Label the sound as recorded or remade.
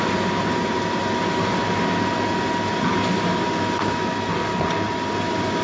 recorded